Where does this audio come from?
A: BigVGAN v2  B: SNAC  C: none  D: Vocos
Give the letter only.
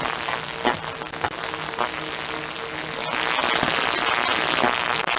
C